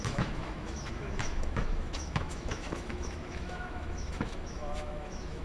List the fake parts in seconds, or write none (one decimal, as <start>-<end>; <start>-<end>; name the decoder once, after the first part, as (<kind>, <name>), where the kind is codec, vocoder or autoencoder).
0.0-5.4 (autoencoder, DAC-VAE)